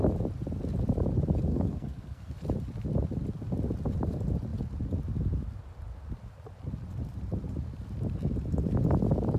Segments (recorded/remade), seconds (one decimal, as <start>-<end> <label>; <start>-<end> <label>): 0.0-1.5 recorded; 1.5-2.3 remade; 2.3-9.4 recorded